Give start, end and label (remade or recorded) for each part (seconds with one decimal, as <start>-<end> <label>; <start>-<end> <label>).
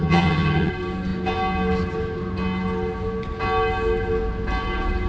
0.0-0.7 remade; 0.7-5.1 recorded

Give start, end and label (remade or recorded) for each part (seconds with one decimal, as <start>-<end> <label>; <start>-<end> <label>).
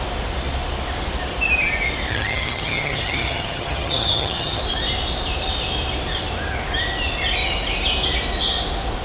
0.0-2.1 recorded; 2.1-4.6 remade; 4.6-9.0 recorded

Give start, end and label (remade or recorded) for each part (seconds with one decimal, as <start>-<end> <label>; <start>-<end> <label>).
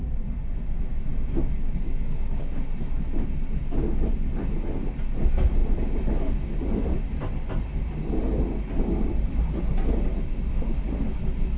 0.0-11.6 recorded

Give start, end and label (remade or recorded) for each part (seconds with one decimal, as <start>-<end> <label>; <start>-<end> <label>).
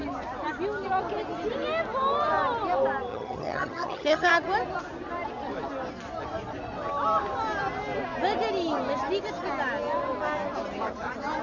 0.0-3.1 recorded; 3.1-4.3 remade; 4.3-11.4 recorded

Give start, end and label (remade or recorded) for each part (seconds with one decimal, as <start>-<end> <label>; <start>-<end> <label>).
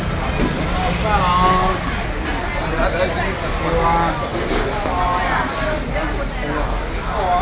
0.0-7.4 recorded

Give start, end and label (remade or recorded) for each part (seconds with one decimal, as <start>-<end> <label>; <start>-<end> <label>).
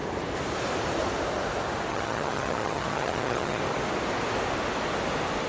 0.0-1.9 recorded; 1.9-3.6 remade; 3.6-5.5 recorded